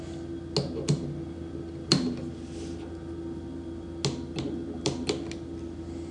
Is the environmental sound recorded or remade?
recorded